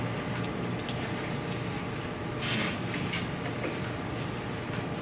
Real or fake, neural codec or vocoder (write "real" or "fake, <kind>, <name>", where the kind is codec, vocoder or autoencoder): real